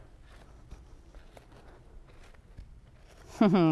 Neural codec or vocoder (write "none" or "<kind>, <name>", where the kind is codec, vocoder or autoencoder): none